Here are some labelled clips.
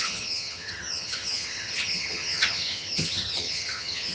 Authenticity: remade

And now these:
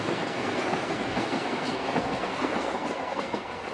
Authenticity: remade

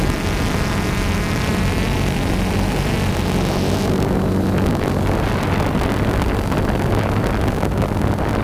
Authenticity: recorded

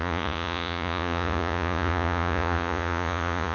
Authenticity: remade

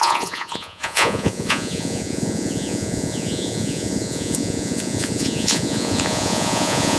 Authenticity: remade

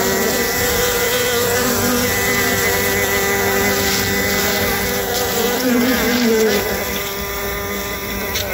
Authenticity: recorded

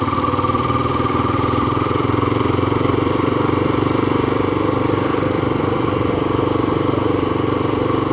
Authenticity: remade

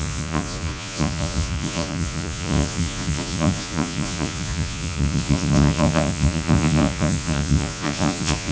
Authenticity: remade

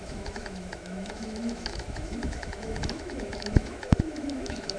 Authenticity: remade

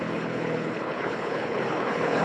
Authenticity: remade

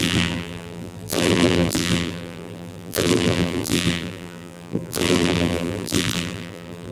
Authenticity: remade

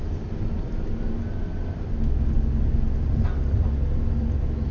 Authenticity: recorded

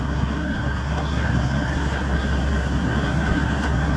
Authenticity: remade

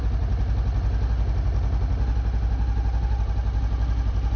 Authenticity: recorded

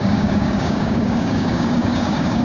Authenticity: remade